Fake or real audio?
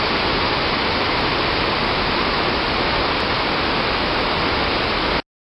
real